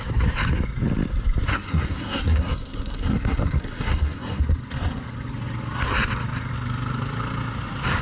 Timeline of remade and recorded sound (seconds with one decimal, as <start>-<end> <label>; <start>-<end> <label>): 0.0-1.5 recorded; 1.5-4.4 remade; 4.4-8.0 recorded